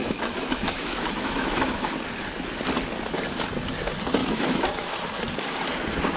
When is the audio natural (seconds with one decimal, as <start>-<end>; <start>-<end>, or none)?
1.9-4.2; 4.9-6.2